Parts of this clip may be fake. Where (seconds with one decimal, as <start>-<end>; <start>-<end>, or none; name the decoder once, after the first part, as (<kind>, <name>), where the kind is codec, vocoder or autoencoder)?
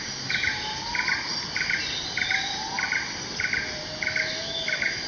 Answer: 0.0-0.7 (autoencoder, DAC-VAE); 3.8-5.1